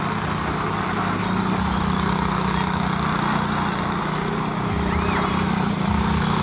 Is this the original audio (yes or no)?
yes